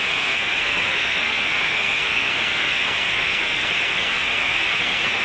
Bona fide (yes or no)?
no